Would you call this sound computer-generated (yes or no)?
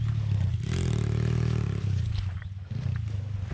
no